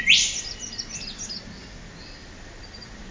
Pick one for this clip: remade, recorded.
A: recorded